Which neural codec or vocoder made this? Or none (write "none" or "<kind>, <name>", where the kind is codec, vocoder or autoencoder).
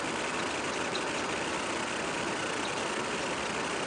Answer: none